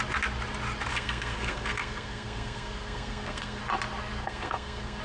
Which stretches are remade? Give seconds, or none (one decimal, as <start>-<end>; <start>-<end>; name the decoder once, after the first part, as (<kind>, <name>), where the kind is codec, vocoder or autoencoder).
0.9-3.6 (codec, SNAC); 4.2-5.0